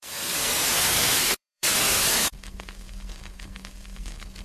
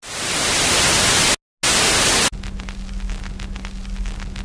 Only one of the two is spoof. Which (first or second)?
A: first